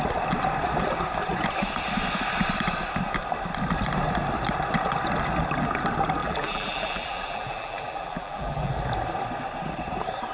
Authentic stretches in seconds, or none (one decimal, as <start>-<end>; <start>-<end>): 0.0-6.2; 8.7-10.3